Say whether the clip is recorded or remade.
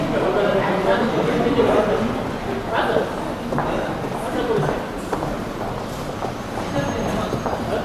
recorded